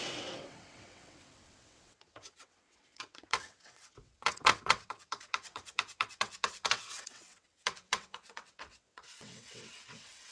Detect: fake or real fake